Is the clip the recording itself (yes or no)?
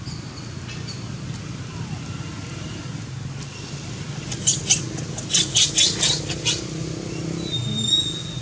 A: yes